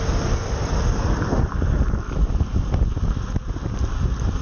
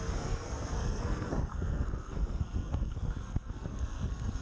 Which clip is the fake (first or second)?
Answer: second